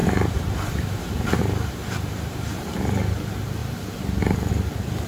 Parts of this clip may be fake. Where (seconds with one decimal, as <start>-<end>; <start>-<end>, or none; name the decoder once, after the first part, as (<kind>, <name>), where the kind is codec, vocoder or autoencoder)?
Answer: 0.0-2.8 (vocoder, BigVGAN v2)